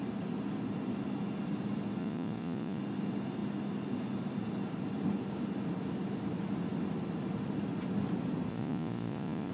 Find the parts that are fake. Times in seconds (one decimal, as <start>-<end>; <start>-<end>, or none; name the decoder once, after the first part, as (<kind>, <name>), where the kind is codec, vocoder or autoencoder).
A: 2.0-2.8 (vocoder, Vocos); 8.5-9.5